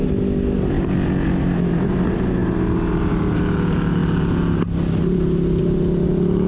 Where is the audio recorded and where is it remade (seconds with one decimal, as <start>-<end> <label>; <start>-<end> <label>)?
0.0-2.4 recorded; 2.4-3.1 remade; 3.1-6.5 recorded